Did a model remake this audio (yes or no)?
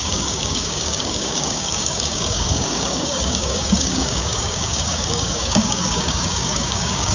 yes